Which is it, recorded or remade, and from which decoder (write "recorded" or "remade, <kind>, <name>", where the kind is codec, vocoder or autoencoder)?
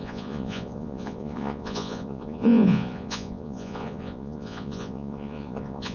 remade, vocoder, Vocos